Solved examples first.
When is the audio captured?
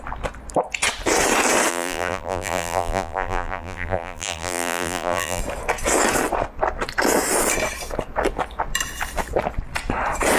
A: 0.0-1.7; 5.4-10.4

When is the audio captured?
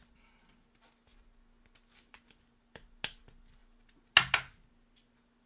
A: 0.0-5.5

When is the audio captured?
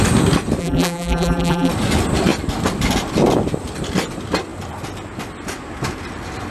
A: 0.0-0.6; 1.7-6.5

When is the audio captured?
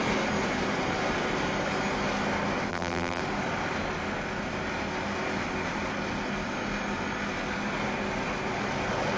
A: 0.0-2.7; 3.2-9.2